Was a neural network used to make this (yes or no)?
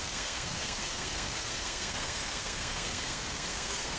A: yes